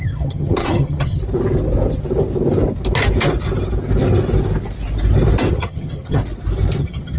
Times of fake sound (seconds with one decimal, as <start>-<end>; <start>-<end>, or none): 0.0-1.2; 5.5-6.2; 6.8-7.2